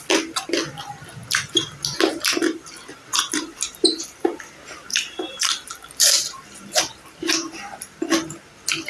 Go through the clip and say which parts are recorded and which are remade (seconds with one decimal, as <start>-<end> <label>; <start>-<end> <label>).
0.0-3.1 recorded; 3.1-7.9 remade; 7.9-8.9 recorded